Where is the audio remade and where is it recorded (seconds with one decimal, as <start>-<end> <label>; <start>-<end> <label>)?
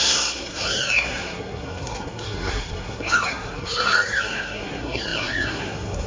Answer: 0.0-6.1 remade